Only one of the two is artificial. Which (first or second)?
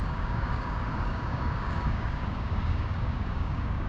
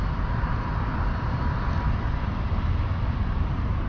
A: first